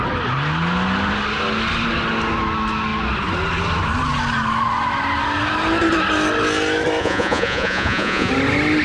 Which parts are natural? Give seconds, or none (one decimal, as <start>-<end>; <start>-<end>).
0.0-7.0; 8.3-8.8